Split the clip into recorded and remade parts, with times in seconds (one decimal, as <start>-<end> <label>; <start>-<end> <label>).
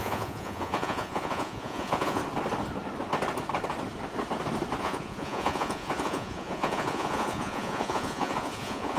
0.0-2.2 remade; 2.2-4.8 recorded; 4.8-9.0 remade